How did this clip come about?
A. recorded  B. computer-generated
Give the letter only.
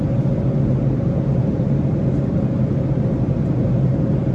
A